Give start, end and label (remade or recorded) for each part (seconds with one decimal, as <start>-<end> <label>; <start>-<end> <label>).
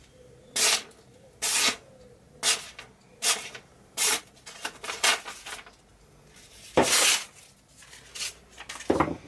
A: 0.0-1.1 recorded; 1.1-1.9 remade; 1.9-3.1 recorded; 3.1-4.2 remade; 4.2-9.3 recorded